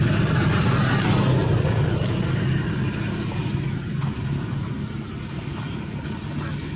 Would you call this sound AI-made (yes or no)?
no